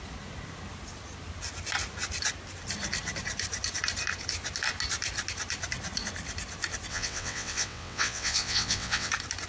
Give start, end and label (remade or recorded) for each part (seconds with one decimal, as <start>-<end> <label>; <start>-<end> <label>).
0.0-6.9 recorded; 6.9-9.1 remade; 9.1-9.5 recorded